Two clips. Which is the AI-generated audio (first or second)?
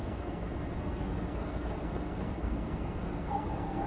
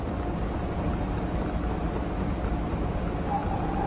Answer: first